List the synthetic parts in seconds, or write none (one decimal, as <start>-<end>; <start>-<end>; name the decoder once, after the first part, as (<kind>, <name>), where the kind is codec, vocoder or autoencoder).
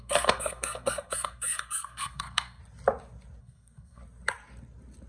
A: 0.0-2.6 (codec, SNAC); 3.4-4.0